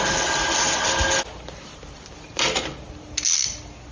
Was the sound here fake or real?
real